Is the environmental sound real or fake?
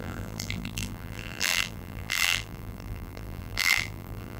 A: fake